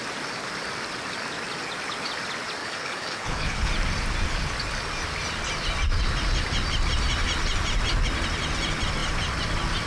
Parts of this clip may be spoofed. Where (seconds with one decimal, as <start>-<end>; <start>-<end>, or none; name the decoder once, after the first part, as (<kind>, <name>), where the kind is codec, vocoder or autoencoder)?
2.6-3.7 (codec, HILCodec)